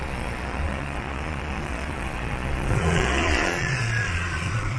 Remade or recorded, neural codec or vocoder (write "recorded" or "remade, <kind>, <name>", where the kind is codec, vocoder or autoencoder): remade, vocoder, Vocos